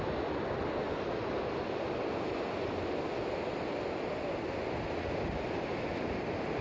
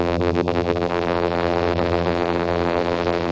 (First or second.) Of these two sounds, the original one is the first